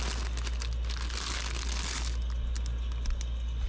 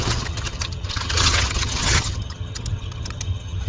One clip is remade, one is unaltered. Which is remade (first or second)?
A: second